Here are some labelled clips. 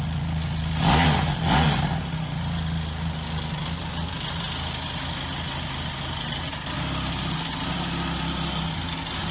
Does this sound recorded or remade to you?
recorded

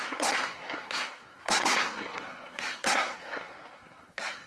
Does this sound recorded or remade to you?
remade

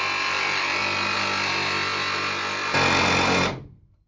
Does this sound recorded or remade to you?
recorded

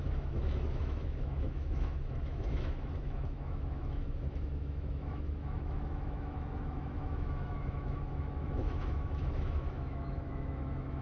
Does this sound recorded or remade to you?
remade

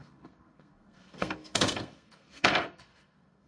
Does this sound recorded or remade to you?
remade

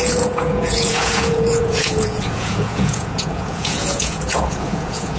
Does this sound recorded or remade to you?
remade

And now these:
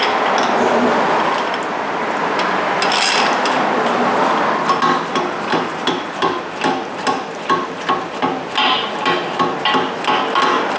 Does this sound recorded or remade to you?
recorded